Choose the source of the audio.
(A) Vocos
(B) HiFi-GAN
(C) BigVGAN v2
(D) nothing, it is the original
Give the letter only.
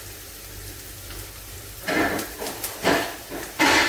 C